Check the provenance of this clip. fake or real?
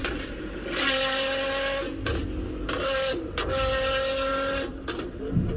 real